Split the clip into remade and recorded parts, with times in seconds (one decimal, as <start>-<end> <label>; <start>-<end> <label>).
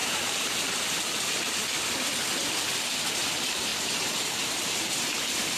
0.0-1.3 remade; 1.3-3.7 recorded; 3.7-5.6 remade